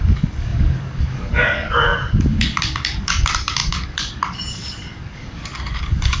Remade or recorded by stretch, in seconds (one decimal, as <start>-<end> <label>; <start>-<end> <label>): 0.0-6.2 remade